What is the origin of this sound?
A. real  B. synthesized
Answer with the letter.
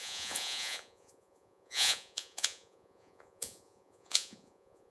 B